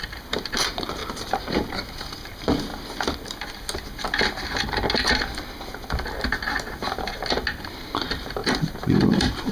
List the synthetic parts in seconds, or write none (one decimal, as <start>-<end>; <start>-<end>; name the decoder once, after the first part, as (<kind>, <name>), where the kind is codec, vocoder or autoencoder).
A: 0.0-1.0 (vocoder, BigVGAN v2); 1.6-2.7; 7.6-9.5